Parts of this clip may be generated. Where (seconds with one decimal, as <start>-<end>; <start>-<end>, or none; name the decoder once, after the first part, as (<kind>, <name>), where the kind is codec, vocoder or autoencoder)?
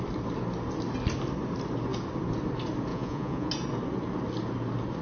2.9-3.5 (vocoder, Vocos)